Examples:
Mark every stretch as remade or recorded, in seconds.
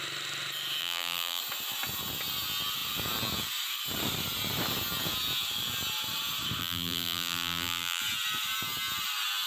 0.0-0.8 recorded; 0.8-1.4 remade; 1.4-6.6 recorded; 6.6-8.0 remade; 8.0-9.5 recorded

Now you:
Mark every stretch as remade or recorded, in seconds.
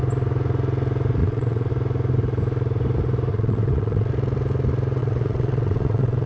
0.0-1.2 recorded; 1.2-1.7 remade; 1.7-3.3 recorded; 3.3-4.1 remade; 4.1-5.0 recorded; 5.0-6.3 remade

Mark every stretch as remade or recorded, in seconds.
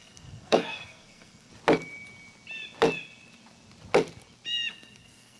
0.0-1.5 remade; 1.5-4.7 recorded; 4.7-5.4 remade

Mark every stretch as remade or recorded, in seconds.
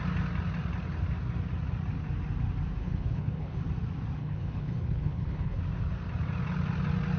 0.0-2.8 recorded; 2.8-3.6 remade; 3.6-4.2 recorded; 4.2-5.6 remade; 5.6-7.2 recorded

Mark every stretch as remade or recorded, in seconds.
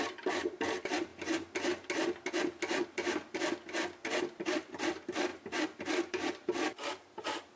0.0-1.1 remade; 1.1-2.8 recorded; 2.8-7.6 remade